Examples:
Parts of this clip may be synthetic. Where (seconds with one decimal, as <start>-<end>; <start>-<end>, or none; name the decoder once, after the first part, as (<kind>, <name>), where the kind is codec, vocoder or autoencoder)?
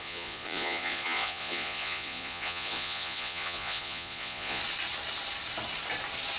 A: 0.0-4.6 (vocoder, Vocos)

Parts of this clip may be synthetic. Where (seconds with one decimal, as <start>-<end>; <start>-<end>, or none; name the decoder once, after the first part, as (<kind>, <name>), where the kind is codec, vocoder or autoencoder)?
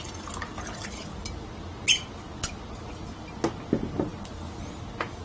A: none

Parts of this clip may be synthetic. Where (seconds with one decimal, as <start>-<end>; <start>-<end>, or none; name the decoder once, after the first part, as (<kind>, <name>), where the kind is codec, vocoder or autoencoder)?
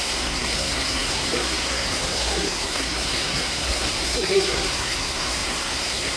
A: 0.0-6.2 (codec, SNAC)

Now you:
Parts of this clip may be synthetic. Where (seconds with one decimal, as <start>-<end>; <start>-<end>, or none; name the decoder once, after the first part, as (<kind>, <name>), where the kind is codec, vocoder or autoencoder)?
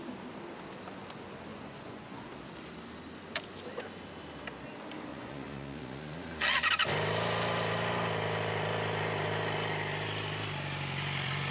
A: 1.5-2.4 (vocoder, Vocos); 5.1-6.7